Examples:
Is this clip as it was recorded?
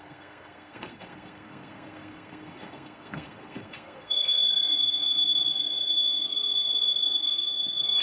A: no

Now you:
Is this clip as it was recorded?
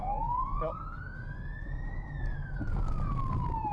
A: yes